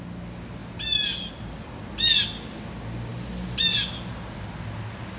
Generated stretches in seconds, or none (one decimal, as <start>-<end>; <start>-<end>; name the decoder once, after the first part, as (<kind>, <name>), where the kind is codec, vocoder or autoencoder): none

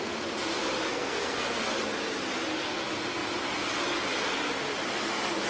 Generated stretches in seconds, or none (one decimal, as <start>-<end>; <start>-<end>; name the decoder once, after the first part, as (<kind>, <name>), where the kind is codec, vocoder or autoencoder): 0.9-1.6 (codec, SNAC)

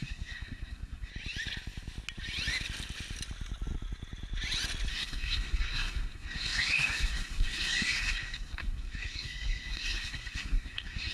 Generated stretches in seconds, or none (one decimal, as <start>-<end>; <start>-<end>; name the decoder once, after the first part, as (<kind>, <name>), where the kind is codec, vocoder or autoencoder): 0.0-1.1 (codec, SNAC); 4.9-11.1

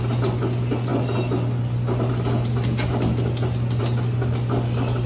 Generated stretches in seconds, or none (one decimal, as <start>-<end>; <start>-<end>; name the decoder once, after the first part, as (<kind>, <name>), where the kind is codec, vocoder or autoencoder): none

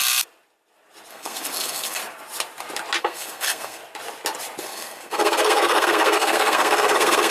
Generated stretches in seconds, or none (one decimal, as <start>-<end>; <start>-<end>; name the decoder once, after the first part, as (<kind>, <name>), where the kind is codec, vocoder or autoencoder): 1.1-2.0 (codec, SNAC); 3.0-3.8; 4.6-7.3

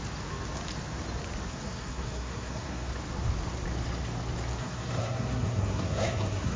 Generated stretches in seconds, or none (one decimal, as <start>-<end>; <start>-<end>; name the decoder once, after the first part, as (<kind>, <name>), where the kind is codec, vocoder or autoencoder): 1.5-2.9 (codec, SNAC); 4.6-6.6

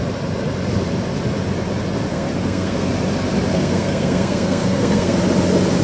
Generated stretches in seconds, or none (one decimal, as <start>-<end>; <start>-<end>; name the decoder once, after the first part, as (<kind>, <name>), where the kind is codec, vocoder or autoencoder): 2.1-2.9 (codec, SNAC); 3.5-5.2